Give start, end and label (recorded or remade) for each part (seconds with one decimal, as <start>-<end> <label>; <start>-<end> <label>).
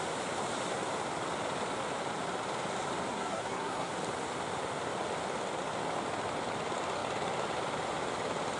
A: 0.0-3.1 recorded; 3.1-3.9 remade; 3.9-8.6 recorded